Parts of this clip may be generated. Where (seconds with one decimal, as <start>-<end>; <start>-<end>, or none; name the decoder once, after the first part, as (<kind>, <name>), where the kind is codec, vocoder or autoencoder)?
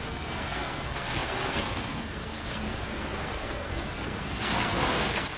0.0-5.4 (codec, SNAC)